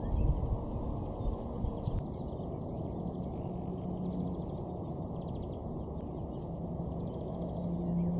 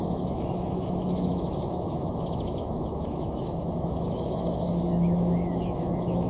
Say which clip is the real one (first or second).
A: first